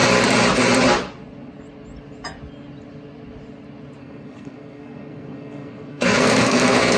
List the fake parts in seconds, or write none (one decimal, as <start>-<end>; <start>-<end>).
4.0-7.0